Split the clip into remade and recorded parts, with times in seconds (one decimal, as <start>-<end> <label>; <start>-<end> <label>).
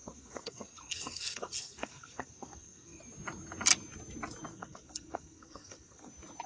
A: 0.0-3.0 remade; 3.0-4.5 recorded; 4.5-6.1 remade; 6.1-6.5 recorded